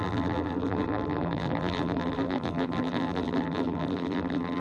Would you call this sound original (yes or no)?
no